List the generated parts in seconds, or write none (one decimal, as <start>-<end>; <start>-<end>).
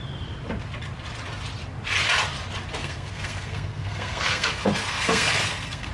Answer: 2.8-5.9